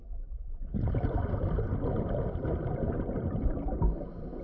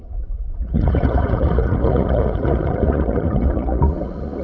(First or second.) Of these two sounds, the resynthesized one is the second